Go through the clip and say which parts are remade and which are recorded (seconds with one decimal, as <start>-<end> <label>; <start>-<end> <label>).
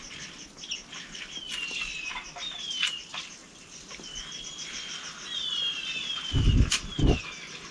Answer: 0.0-7.7 recorded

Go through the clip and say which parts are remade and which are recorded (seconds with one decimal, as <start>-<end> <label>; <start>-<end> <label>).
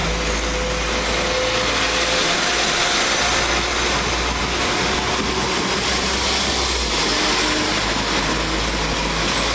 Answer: 0.0-9.5 recorded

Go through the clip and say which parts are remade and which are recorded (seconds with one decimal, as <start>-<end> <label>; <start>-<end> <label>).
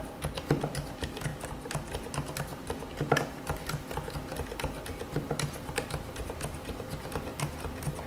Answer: 0.0-8.1 recorded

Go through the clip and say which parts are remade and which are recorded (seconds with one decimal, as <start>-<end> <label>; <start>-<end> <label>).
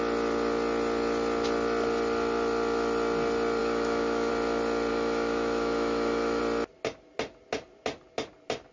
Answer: 0.0-3.6 recorded; 3.6-4.3 remade; 4.3-4.9 recorded; 4.9-6.4 remade; 6.4-8.7 recorded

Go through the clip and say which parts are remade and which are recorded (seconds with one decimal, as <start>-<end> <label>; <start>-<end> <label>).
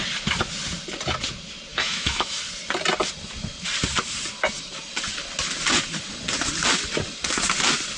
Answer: 0.0-1.7 recorded; 1.7-2.4 remade; 2.4-8.0 recorded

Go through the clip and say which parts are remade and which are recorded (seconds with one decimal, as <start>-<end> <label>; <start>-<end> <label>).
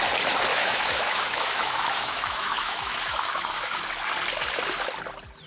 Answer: 0.0-0.5 recorded; 0.5-3.8 remade; 3.8-5.5 recorded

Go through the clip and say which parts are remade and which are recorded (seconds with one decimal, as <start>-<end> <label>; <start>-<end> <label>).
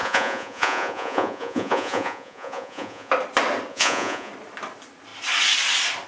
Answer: 0.0-3.1 remade; 3.1-3.7 recorded; 3.7-4.3 remade; 4.3-6.1 recorded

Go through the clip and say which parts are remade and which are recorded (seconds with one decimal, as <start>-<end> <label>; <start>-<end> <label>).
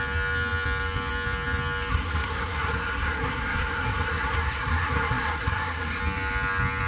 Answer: 0.0-1.9 recorded; 1.9-6.0 remade; 6.0-6.9 recorded